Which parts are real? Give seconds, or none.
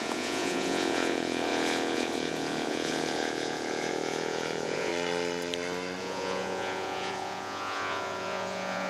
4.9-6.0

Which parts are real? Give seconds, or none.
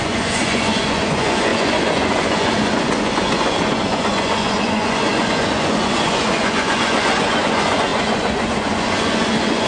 none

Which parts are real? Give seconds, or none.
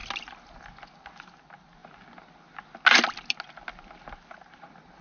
0.0-5.0